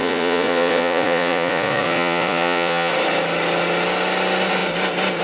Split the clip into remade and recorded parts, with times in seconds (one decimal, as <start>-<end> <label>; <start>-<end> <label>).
0.0-2.9 remade; 2.9-5.2 recorded